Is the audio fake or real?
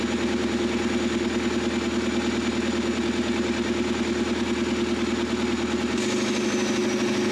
real